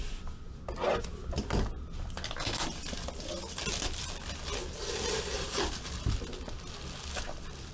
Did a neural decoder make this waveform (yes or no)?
no